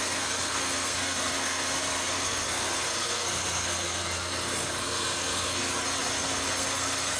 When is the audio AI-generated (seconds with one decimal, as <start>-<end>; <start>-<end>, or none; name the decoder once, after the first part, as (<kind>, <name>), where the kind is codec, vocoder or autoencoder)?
0.0-5.6 (codec, SNAC); 6.2-7.2